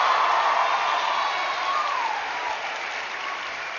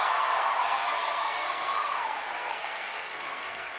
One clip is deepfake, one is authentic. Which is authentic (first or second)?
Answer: first